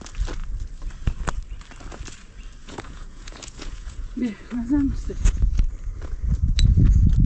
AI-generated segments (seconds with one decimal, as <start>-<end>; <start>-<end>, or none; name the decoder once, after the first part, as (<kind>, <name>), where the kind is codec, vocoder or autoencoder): 2.6-5.7 (vocoder, Vocos)